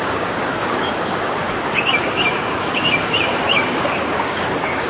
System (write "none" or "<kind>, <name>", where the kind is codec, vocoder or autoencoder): codec, DAC